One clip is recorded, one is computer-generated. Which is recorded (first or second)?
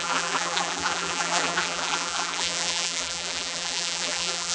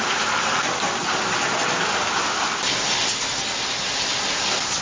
second